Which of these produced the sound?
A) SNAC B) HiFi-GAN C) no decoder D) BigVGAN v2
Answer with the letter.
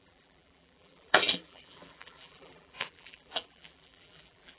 D